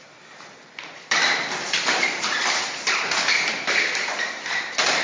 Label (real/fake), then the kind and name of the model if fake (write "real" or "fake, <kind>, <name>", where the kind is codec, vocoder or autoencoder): fake, vocoder, BigVGAN v2